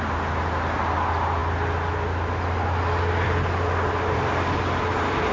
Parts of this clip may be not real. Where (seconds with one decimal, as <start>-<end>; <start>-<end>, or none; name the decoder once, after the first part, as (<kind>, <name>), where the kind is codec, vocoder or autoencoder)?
none